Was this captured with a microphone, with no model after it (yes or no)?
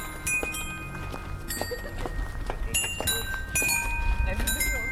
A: yes